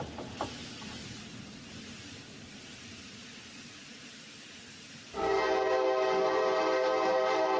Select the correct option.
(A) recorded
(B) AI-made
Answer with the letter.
A